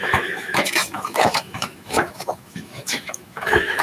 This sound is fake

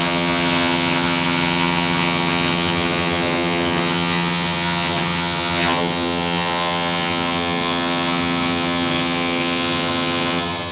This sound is fake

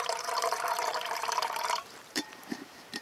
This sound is fake